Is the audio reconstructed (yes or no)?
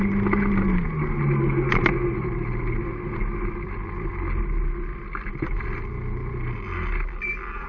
no